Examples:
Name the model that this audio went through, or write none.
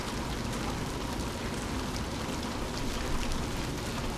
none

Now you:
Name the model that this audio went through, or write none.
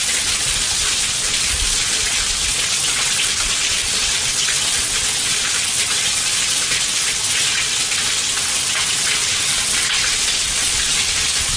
vocoder, WaveNeXt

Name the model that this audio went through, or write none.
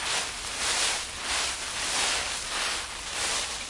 none